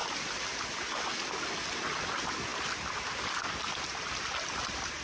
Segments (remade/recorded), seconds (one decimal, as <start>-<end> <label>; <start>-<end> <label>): 0.0-5.0 recorded